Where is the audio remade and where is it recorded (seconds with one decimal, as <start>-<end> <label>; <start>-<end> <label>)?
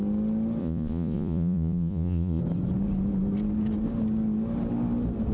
0.0-0.6 recorded; 0.6-2.4 remade; 2.4-5.3 recorded